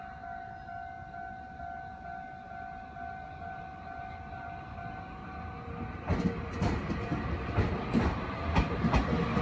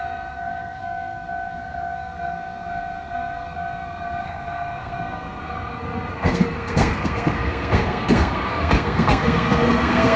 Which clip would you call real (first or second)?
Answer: first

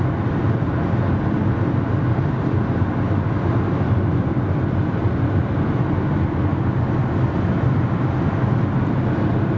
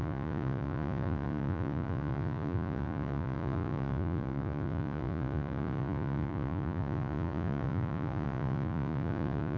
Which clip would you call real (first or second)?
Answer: first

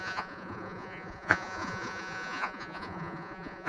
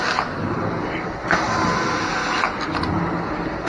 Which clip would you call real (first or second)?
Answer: second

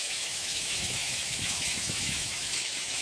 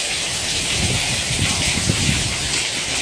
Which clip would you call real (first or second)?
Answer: second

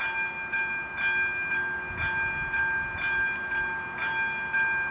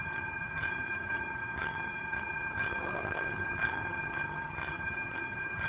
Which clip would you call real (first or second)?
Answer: first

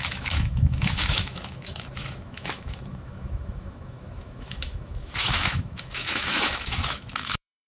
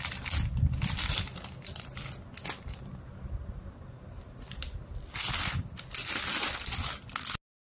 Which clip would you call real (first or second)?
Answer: second